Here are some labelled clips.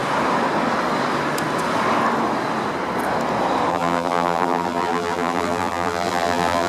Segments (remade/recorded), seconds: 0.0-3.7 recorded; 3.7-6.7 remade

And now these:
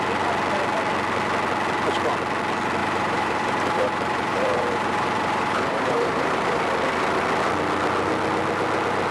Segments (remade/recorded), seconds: 0.0-2.8 recorded; 2.8-6.6 remade; 6.6-9.1 recorded

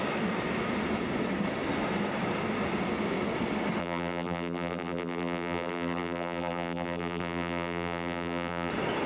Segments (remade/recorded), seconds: 0.0-3.8 recorded; 3.8-8.7 remade; 8.7-9.1 recorded

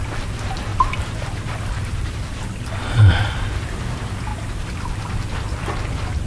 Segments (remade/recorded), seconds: 0.0-0.7 recorded; 0.7-2.1 remade; 2.1-4.3 recorded; 4.3-4.8 remade; 4.8-6.3 recorded